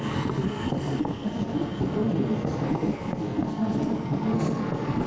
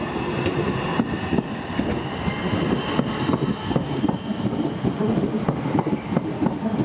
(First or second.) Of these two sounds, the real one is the second